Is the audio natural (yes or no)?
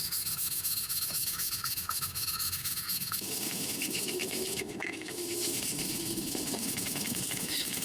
no